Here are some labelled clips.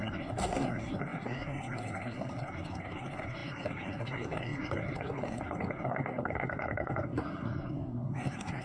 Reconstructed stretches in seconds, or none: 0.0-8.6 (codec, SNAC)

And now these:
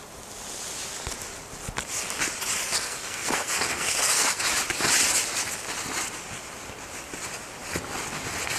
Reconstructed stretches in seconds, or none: 2.7-4.4 (codec, SNAC)

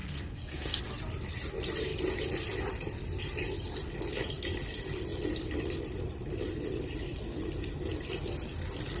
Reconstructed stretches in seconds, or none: 0.0-0.8 (codec, SNAC)

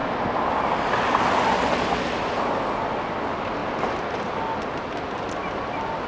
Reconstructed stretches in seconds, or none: none

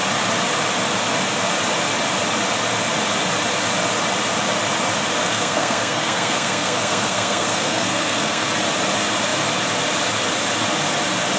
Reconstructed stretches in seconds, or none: 5.2-8.5 (codec, SNAC)

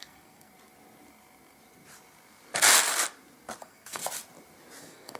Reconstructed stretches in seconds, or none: 0.0-0.5 (codec, SNAC); 3.6-4.0; 4.8-5.2